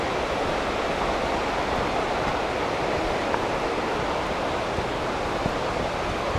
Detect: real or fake real